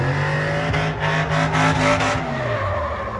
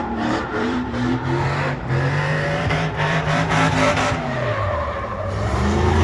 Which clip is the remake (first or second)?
second